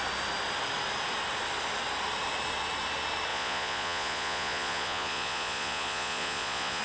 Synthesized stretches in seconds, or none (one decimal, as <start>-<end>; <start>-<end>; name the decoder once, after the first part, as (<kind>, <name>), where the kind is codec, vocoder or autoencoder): 3.3-6.8 (vocoder, Vocos)